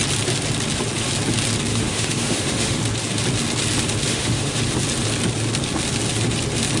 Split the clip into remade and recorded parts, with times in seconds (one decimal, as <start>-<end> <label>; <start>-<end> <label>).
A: 0.0-1.7 recorded; 1.7-2.8 remade; 2.8-4.1 recorded; 4.1-4.6 remade; 4.6-6.8 recorded